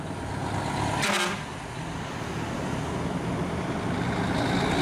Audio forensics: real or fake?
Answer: real